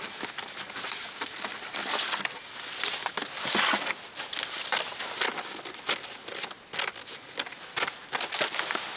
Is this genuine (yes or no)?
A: yes